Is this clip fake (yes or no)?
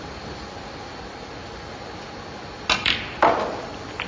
no